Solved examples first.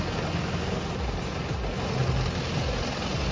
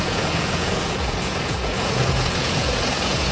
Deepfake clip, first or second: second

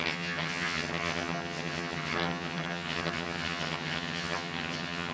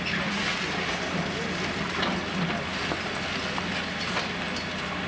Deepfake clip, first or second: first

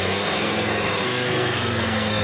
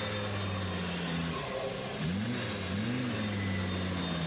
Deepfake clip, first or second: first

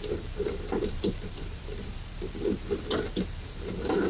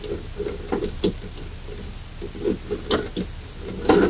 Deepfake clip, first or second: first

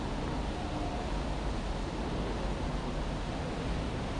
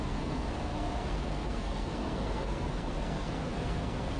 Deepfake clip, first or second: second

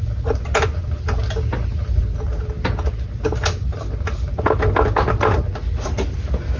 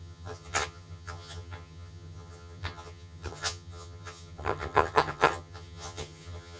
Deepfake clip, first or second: second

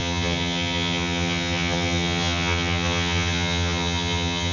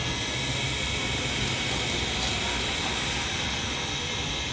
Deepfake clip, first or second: first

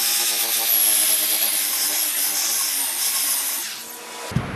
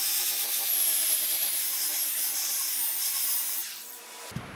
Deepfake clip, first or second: second